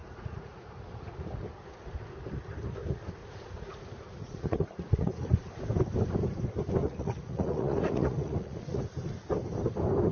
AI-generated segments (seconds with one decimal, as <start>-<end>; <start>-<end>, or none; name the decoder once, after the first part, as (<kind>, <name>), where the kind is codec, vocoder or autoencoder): 0.0-0.7 (vocoder, Vocos); 3.2-3.8; 4.2-5.5; 6.8-8.8